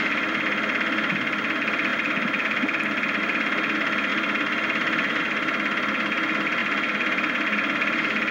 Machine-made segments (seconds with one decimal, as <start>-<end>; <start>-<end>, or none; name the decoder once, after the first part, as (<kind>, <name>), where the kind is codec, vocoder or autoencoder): none